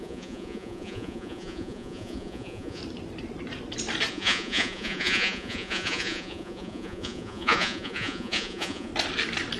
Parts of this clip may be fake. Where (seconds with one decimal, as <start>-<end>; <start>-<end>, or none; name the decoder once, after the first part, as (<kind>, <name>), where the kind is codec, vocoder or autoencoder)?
0.0-2.8 (vocoder, Vocos); 4.1-8.9